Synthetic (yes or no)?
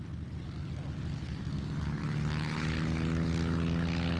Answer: no